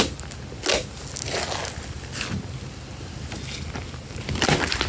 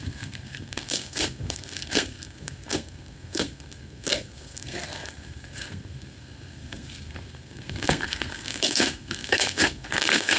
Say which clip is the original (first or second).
first